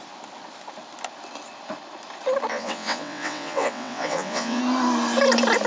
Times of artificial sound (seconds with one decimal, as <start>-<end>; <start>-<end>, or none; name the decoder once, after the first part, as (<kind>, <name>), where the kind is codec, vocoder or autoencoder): 2.5-4.6 (vocoder, WaveNeXt)